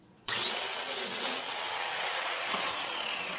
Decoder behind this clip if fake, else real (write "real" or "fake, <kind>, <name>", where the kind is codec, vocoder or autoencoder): fake, vocoder, WaveNeXt